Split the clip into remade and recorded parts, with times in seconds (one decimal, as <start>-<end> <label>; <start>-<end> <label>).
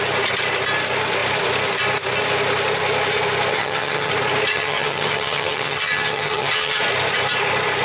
0.0-3.5 recorded; 3.5-4.1 remade; 4.1-4.5 recorded; 4.5-6.8 remade; 6.8-7.8 recorded